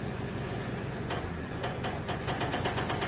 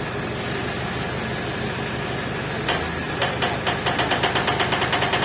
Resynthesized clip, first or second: first